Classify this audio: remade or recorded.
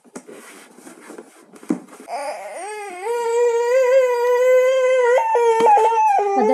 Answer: recorded